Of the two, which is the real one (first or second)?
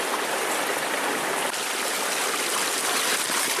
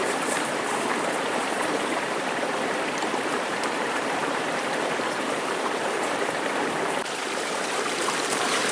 first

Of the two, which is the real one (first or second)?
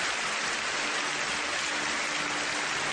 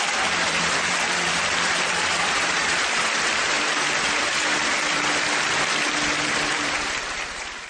first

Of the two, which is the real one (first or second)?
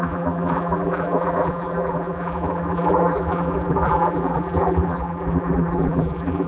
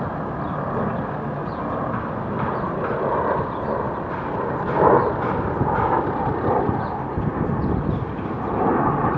second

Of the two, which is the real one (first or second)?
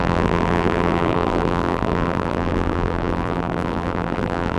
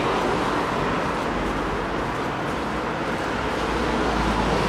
second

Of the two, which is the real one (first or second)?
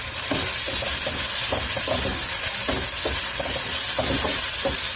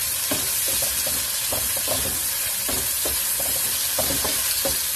first